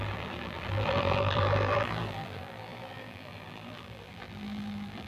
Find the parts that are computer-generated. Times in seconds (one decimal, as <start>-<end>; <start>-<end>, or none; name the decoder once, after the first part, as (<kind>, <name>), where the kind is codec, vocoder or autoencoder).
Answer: 0.0-5.1 (vocoder, BigVGAN v2)